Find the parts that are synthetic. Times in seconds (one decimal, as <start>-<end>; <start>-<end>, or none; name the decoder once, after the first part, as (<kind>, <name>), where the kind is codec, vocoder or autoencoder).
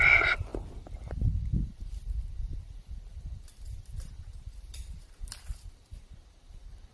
0.0-6.9 (vocoder, BigVGAN v2)